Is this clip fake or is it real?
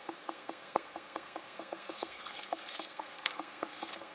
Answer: fake